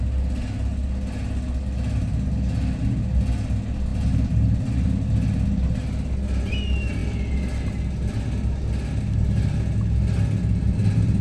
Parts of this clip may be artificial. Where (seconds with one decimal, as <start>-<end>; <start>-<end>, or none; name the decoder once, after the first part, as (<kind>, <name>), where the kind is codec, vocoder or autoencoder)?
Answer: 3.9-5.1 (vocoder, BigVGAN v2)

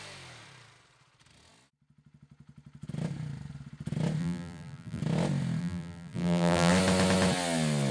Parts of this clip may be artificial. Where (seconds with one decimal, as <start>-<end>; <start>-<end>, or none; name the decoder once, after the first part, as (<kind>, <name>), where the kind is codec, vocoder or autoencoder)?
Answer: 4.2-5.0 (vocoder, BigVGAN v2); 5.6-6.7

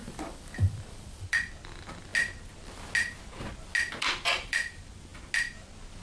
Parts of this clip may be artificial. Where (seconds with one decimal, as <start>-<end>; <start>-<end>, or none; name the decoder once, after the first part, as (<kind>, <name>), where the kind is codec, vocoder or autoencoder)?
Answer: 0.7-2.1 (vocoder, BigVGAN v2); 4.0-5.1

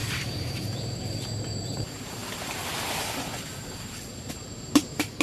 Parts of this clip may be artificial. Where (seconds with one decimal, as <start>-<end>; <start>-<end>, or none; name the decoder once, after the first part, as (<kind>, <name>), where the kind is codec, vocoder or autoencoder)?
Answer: 0.0-2.2 (vocoder, BigVGAN v2); 4.2-5.2

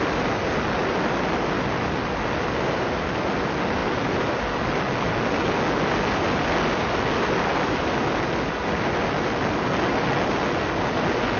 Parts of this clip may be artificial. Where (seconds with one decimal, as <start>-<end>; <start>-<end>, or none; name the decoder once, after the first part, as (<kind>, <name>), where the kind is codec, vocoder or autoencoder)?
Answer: none

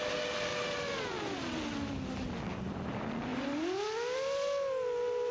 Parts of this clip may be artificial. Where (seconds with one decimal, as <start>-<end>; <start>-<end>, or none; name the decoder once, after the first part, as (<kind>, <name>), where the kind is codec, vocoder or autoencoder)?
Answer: none

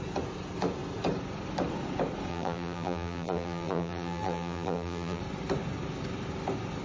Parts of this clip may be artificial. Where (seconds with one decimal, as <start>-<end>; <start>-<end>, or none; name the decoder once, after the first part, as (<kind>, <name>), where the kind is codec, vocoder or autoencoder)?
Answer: 2.3-5.2 (vocoder, BigVGAN v2)